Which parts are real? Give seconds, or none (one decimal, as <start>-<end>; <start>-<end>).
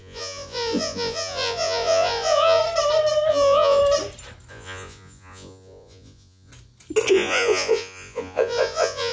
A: 2.6-3.3; 3.8-4.5; 6.5-7.1